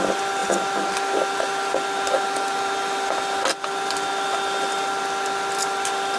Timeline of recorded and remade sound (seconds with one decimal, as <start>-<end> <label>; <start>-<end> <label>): 0.0-6.2 recorded